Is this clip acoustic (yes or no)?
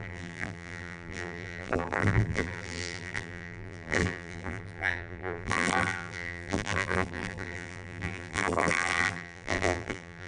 no